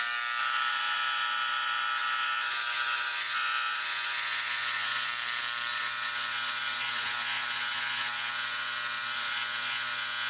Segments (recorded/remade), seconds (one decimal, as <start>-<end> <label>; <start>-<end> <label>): 0.0-0.4 recorded; 0.4-5.1 remade; 5.1-5.7 recorded; 5.7-10.3 remade